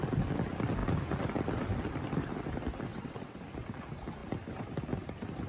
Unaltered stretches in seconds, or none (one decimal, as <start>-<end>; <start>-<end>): 0.0-2.9; 3.4-5.5